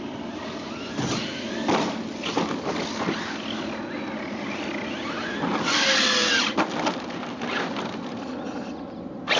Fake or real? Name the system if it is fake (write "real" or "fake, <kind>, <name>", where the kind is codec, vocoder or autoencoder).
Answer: real